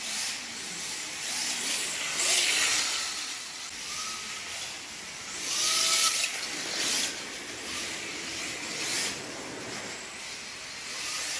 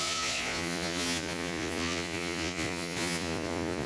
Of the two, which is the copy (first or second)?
second